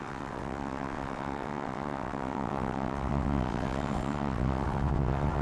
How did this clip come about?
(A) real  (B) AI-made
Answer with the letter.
B